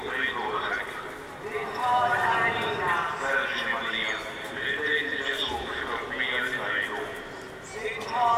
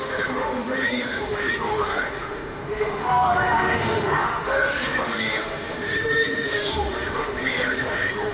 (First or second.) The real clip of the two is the first